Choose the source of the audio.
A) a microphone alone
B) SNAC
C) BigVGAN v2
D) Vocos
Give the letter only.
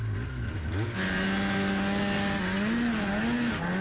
A